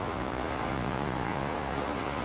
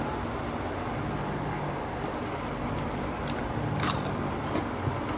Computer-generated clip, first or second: first